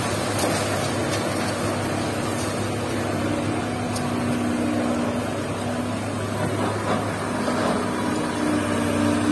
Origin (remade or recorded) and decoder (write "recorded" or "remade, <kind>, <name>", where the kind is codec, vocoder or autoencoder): recorded